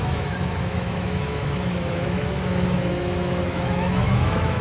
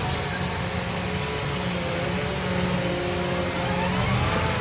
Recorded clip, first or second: second